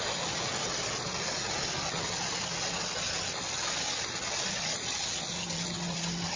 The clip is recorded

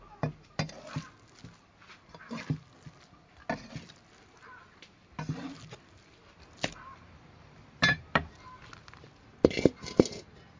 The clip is recorded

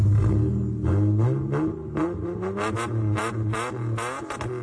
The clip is recorded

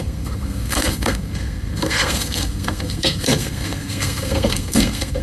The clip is remade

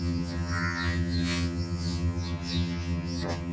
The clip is remade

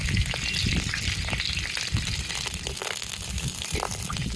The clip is recorded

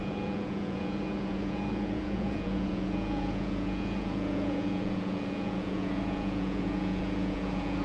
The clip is remade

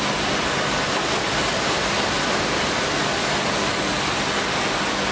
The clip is recorded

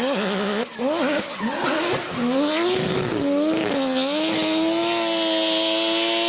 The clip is recorded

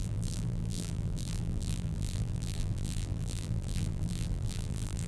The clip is remade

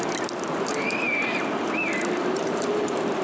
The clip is remade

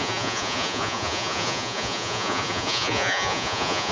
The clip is remade